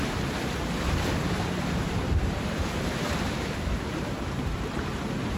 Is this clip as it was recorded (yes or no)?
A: no